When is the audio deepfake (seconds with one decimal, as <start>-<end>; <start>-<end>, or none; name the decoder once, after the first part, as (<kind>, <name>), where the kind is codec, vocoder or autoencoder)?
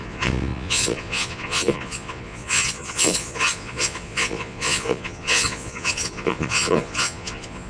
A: 0.0-7.7 (vocoder, Vocos)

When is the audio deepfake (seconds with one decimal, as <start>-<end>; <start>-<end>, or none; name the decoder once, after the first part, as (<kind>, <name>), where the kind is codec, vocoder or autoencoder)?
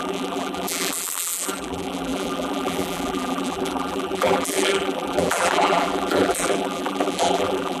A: 0.0-7.8 (vocoder, BigVGAN v2)